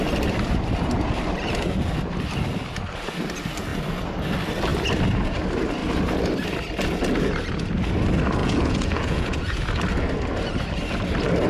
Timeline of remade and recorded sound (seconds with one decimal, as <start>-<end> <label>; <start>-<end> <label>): 0.0-8.4 recorded; 8.4-9.6 remade; 9.6-11.5 recorded